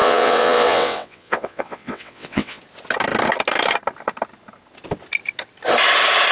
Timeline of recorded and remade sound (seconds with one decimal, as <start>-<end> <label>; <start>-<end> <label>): 0.0-2.6 remade; 2.6-6.3 recorded